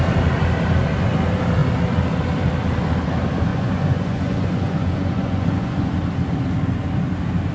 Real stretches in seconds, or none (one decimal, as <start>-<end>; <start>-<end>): 0.0-3.5; 5.9-7.5